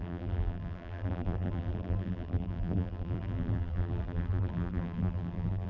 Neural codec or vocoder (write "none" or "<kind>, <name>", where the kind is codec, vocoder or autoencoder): vocoder, BigVGAN v2